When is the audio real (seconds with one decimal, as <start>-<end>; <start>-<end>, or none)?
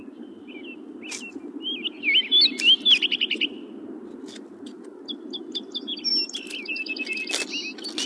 0.0-8.1